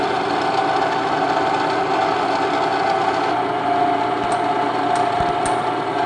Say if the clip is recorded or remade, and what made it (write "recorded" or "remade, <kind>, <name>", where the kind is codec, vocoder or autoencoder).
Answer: recorded